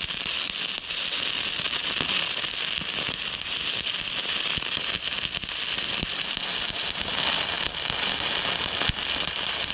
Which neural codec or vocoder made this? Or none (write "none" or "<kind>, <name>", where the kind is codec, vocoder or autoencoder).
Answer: none